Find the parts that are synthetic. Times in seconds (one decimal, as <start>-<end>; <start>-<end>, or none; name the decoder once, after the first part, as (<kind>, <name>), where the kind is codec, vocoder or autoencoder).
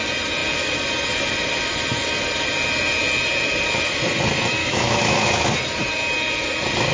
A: 4.6-5.6 (autoencoder, DAC-VAE)